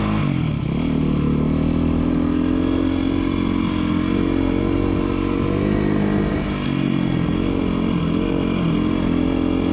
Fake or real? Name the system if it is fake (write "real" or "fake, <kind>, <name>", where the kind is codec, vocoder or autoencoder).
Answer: real